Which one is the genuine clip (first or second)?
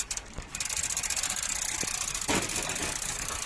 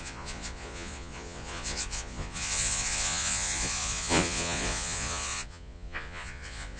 first